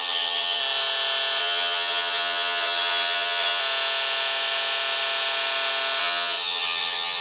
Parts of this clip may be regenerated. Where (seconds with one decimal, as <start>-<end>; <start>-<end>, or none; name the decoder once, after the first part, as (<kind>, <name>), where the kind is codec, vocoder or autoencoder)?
0.0-0.6 (vocoder, HiFi-GAN); 1.4-3.6; 6.0-7.2